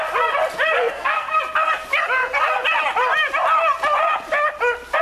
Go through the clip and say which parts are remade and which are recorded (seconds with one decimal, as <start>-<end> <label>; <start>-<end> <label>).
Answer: 0.0-0.8 recorded; 0.8-1.4 remade; 1.4-5.0 recorded